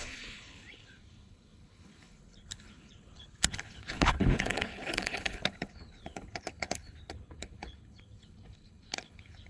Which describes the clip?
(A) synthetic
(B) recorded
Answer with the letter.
A